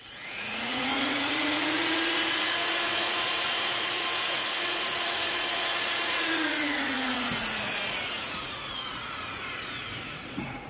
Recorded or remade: remade